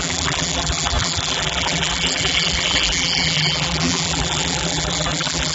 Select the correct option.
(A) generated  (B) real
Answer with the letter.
A